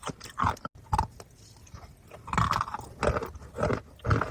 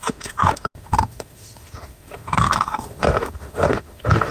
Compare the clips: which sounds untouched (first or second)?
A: first